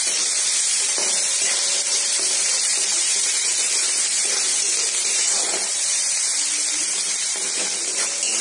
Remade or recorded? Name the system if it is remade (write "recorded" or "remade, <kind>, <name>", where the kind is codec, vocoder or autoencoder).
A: remade, vocoder, BigVGAN v2